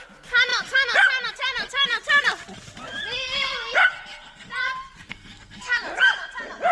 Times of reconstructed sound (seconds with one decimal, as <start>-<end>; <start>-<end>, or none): 3.9-4.5; 5.1-5.7